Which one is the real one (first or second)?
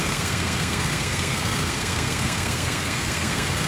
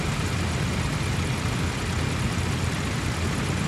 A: second